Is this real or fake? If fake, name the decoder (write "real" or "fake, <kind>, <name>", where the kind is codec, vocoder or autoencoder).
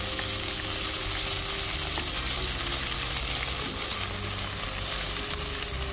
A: real